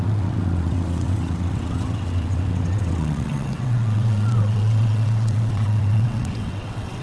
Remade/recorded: remade